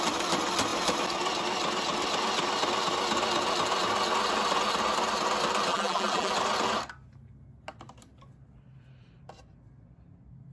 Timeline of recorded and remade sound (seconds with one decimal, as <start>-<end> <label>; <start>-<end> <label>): 0.0-5.7 recorded; 5.7-6.3 remade; 6.3-10.5 recorded